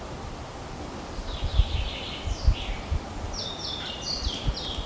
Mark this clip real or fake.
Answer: real